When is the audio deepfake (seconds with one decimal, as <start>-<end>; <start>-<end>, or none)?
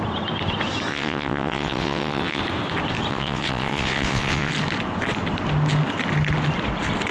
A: 0.9-2.4; 3.1-4.5